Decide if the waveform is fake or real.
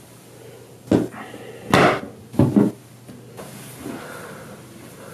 real